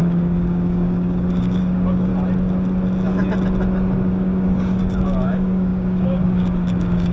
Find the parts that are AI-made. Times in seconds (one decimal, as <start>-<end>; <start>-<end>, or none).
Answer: 0.0-2.1; 4.1-7.1